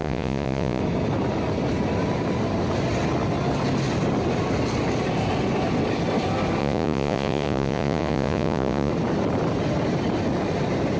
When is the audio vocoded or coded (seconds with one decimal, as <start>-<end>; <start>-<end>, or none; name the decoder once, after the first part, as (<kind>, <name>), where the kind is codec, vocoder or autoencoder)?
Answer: 0.0-0.8 (vocoder, Vocos); 6.6-8.9